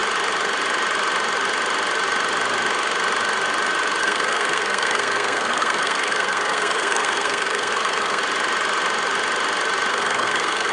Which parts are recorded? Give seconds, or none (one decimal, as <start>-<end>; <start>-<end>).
0.0-4.0; 8.2-9.9